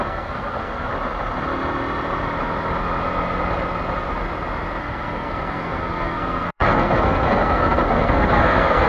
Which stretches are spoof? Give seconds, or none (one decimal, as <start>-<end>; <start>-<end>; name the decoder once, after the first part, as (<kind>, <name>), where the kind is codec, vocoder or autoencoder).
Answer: 0.0-0.9 (codec, SNAC); 4.8-8.9

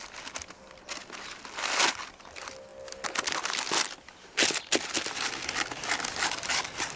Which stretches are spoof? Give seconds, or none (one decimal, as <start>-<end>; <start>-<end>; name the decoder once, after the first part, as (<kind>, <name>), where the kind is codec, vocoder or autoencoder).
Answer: none

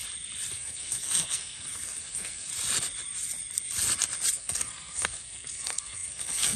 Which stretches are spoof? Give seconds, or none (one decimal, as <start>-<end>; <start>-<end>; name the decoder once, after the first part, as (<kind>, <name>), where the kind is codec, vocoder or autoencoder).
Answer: 0.5-2.5 (codec, SNAC); 4.3-6.6

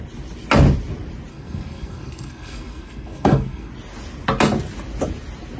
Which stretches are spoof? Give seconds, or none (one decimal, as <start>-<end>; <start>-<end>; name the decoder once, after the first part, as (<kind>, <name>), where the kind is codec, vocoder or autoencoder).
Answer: 1.3-3.7 (codec, SNAC)

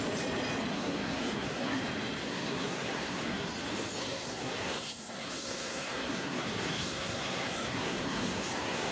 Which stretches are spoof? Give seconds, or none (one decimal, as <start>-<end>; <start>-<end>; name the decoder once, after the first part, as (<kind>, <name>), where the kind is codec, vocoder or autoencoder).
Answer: 0.7-1.8 (codec, SNAC); 2.2-3.5; 4.0-8.9

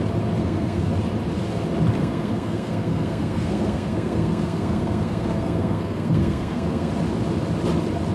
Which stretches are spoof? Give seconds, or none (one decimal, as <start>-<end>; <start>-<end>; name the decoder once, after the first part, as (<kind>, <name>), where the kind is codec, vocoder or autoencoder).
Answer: 0.4-0.9 (codec, SNAC); 2.0-6.9